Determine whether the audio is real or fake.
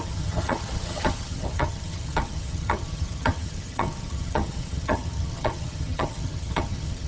fake